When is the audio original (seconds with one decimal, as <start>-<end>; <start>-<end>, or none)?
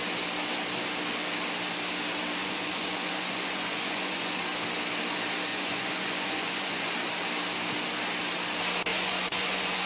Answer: 0.0-2.4; 4.4-5.5; 6.9-8.9